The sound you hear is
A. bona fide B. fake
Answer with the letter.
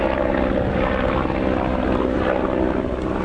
A